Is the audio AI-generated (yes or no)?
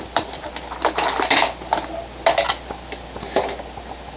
no